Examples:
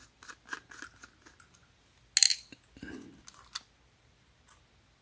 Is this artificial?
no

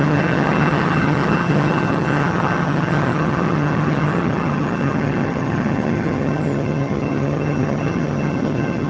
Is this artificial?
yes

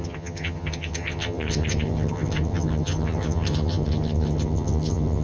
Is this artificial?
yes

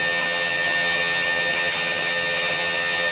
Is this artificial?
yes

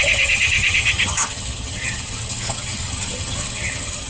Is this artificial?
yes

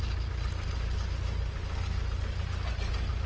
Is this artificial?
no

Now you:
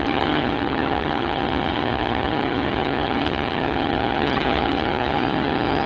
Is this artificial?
yes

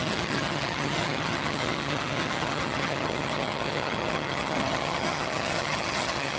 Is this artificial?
yes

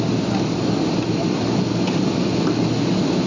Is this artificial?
no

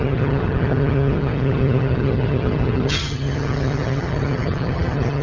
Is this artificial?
yes